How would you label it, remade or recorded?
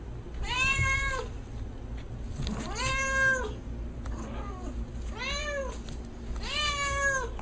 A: recorded